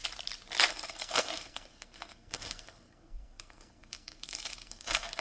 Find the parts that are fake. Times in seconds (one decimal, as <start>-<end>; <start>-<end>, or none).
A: 0.7-5.2